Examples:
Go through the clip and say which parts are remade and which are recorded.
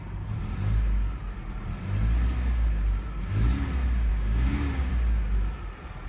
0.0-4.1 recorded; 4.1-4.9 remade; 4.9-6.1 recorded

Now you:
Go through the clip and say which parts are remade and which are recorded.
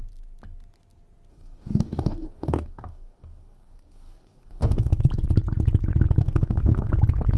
0.0-1.3 recorded; 1.3-5.0 remade; 5.0-6.2 recorded; 6.2-6.9 remade; 6.9-7.4 recorded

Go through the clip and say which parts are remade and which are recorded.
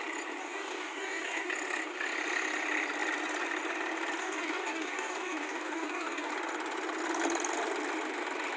0.0-0.4 recorded; 0.4-1.5 remade; 1.5-4.2 recorded; 4.2-6.3 remade; 6.3-8.6 recorded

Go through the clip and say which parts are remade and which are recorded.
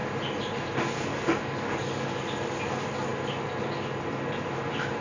0.0-1.1 recorded; 1.1-2.2 remade; 2.2-5.0 recorded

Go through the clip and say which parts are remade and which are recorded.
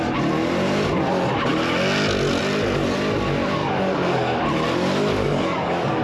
0.0-3.6 recorded; 3.6-4.4 remade; 4.4-5.1 recorded; 5.1-6.0 remade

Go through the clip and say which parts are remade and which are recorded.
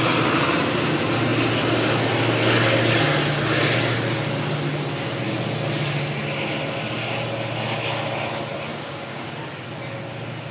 0.0-8.7 recorded; 8.7-9.3 remade; 9.3-10.5 recorded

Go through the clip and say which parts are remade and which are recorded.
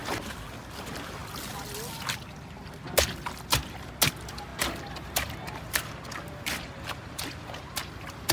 0.0-8.3 recorded